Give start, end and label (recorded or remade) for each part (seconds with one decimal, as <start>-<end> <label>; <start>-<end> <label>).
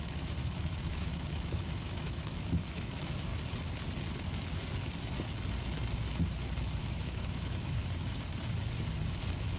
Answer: 0.0-3.3 remade; 3.3-6.8 recorded; 6.8-7.8 remade; 7.8-9.6 recorded